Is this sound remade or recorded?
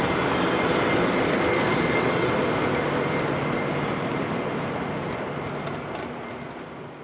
recorded